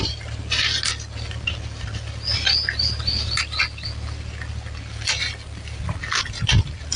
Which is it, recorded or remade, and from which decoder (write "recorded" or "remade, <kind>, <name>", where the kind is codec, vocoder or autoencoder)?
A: recorded